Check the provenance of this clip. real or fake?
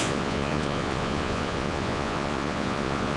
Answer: fake